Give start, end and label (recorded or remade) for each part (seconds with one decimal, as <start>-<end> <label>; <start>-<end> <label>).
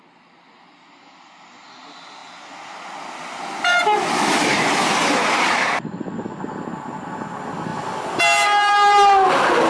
0.0-9.7 recorded